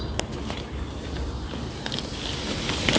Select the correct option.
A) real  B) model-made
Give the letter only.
A